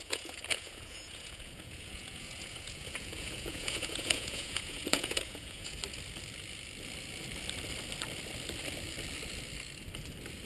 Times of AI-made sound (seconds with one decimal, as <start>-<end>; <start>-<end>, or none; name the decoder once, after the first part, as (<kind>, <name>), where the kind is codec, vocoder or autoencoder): 0.0-5.8 (vocoder, Vocos)